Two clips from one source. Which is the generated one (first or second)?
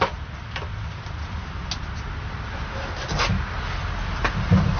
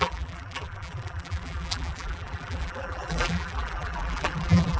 second